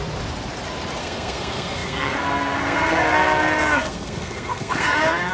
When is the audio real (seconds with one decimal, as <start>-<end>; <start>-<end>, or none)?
0.0-1.0